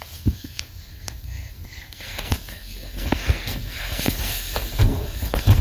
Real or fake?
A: fake